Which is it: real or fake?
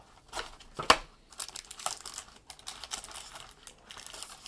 real